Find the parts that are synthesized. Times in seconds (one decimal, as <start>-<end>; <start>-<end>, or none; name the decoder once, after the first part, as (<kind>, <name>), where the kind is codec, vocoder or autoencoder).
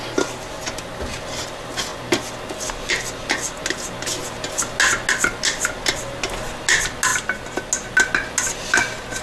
none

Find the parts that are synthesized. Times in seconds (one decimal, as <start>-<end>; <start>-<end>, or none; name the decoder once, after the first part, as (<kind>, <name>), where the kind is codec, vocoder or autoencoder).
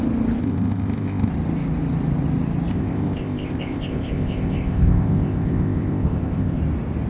0.4-1.3 (codec, ZipCodec); 2.7-6.6